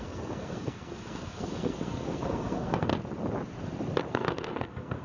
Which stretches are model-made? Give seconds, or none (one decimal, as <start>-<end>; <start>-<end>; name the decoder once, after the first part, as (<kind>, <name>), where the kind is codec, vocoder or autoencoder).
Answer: 0.0-2.9 (codec, SNAC); 4.1-5.0